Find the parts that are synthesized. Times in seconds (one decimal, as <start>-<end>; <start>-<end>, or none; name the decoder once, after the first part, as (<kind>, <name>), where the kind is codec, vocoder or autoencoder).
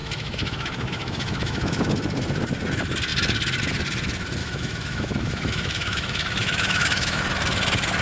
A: 0.0-1.8 (autoencoder, DAC-VAE); 4.4-7.2